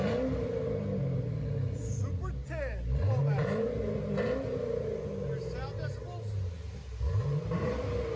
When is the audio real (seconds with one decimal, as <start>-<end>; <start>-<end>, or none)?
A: 0.0-8.2